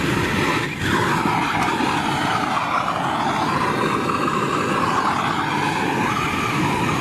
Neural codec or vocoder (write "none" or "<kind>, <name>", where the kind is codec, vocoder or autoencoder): none